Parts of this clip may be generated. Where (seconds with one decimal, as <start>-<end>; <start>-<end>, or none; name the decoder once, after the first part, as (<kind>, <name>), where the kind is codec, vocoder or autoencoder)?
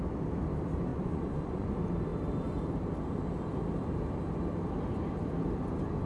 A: 0.9-1.7 (vocoder, Vocos)